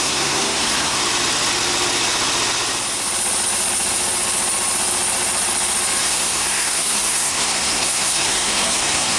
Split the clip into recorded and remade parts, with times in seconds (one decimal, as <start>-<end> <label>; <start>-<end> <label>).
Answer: 0.0-1.0 remade; 1.0-6.0 recorded; 6.0-9.2 remade